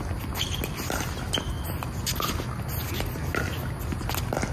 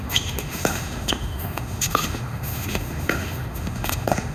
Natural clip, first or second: first